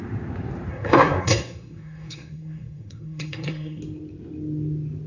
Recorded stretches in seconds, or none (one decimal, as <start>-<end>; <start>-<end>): 0.0-0.7; 3.8-5.1